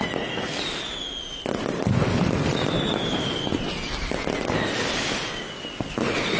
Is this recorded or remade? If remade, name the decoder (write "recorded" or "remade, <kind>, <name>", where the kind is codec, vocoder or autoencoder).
recorded